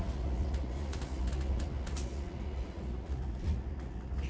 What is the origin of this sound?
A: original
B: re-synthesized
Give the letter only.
B